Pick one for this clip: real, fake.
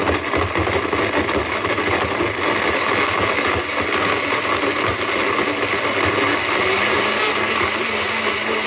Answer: real